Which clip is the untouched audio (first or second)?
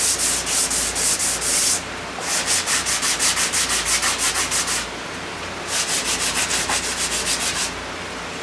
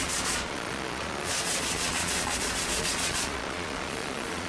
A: first